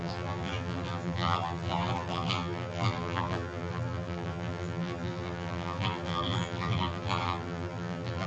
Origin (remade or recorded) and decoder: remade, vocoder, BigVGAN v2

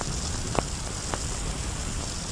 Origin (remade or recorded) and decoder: recorded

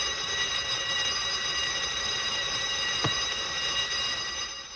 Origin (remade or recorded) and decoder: remade, vocoder, BigVGAN v2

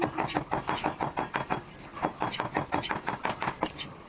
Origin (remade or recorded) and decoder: remade, vocoder, BigVGAN v2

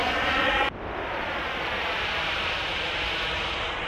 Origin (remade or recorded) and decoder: remade, vocoder, BigVGAN v2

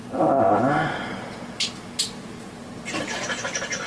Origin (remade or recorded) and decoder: recorded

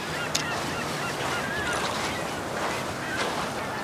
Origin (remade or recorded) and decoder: remade, vocoder, BigVGAN v2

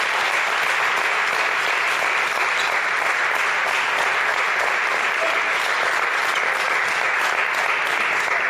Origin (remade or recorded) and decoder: recorded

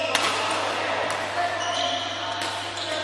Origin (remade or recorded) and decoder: recorded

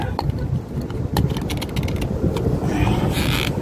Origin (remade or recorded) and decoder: recorded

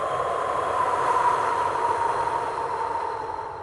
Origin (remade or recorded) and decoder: recorded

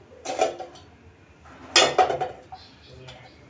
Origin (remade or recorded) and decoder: recorded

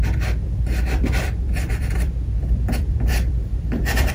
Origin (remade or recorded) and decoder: remade, vocoder, BigVGAN v2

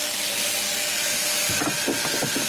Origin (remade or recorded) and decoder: recorded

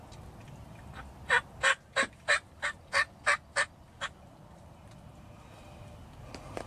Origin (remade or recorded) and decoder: recorded